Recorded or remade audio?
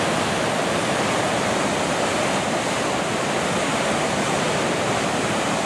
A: recorded